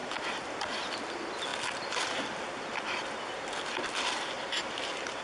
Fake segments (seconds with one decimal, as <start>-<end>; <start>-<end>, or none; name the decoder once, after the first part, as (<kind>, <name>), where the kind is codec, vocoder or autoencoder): none